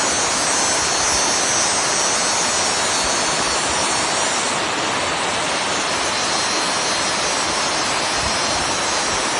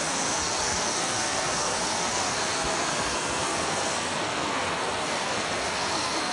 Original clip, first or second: first